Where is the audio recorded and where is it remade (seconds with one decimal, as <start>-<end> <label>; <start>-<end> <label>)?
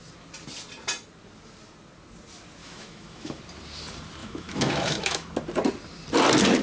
0.0-2.6 recorded; 2.6-3.4 remade; 3.4-4.2 recorded; 4.2-5.3 remade; 5.3-6.6 recorded